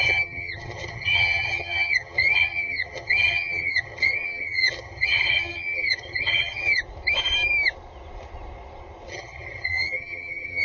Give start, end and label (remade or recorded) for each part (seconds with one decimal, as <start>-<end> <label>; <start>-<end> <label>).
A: 0.0-6.8 remade; 6.8-9.1 recorded; 9.1-10.6 remade